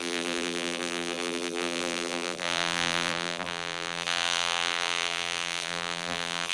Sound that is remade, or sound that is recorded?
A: remade